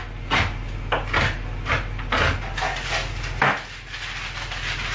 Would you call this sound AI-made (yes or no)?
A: no